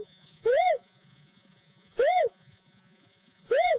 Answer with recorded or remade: remade